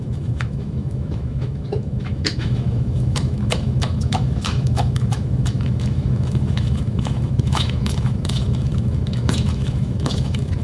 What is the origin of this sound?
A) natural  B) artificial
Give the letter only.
B